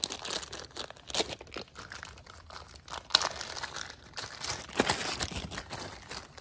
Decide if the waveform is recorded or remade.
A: recorded